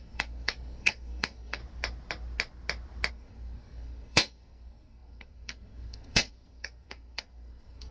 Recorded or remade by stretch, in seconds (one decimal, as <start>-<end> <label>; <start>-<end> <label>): 0.0-1.6 remade; 1.6-3.1 recorded; 3.1-7.9 remade